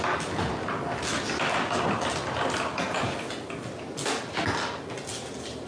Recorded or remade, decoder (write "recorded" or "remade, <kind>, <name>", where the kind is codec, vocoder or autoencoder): recorded